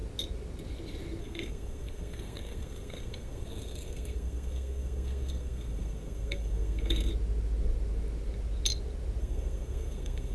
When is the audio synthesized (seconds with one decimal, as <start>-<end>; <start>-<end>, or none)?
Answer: 1.2-7.1; 9.2-10.3